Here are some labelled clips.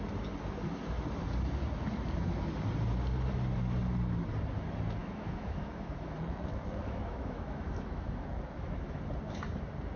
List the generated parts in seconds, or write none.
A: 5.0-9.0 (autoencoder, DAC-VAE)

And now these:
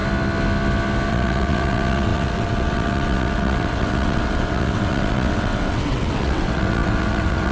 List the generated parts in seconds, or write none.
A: 1.1-7.5 (vocoder, WaveNeXt)

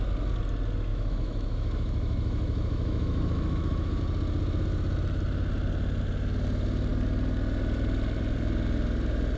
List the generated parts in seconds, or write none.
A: 0.9-4.0 (autoencoder, DAC-VAE)

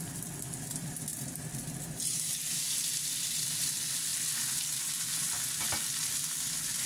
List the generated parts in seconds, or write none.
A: 0.0-4.1 (vocoder, BigVGAN v2); 5.1-6.9